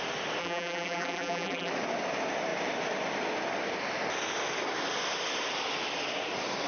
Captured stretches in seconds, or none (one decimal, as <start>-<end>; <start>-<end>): 0.0-0.4; 1.7-6.7